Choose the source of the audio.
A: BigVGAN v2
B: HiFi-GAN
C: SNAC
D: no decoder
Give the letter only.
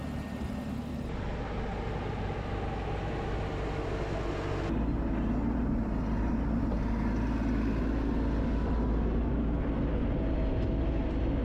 D